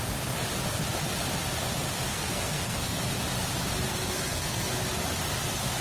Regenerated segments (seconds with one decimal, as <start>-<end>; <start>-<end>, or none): 2.1-3.0; 3.9-4.7

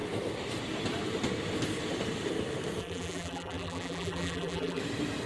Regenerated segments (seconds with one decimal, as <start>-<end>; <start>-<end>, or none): 2.8-4.8

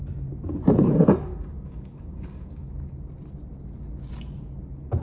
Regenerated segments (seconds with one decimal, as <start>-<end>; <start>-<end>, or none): 1.3-2.7

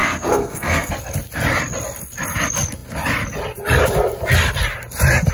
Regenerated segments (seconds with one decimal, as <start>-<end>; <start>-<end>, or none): 0.0-0.9

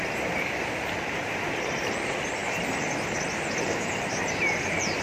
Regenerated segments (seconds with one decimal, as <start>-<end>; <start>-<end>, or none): 0.0-5.0

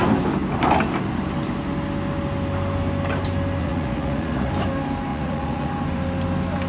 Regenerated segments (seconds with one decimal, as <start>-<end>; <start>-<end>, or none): 3.6-4.5; 5.1-5.7